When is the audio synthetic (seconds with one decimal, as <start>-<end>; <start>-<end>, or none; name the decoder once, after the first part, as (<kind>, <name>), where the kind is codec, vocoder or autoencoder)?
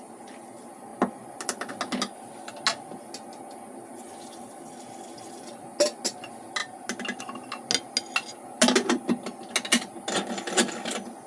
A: none